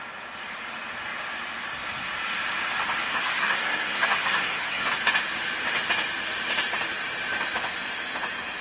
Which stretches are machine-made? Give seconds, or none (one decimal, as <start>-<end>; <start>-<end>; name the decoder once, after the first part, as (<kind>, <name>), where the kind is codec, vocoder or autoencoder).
3.1-4.9 (codec, SNAC)

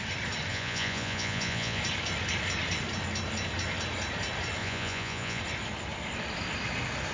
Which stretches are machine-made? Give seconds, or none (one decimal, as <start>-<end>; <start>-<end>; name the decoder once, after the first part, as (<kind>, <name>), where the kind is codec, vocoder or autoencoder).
0.5-1.8 (vocoder, Vocos); 4.6-5.4

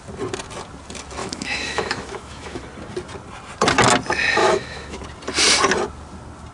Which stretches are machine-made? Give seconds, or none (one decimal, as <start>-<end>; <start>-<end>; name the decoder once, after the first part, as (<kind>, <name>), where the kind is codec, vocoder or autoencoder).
1.2-2.6 (autoencoder, DAC-VAE); 4.4-5.0